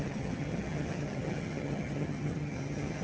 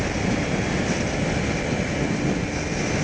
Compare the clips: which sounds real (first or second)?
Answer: second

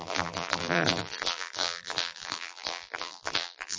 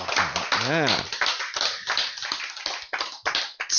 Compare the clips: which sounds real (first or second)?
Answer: second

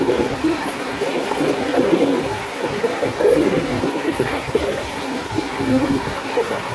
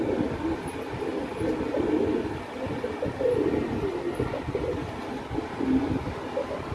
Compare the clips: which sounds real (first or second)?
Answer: second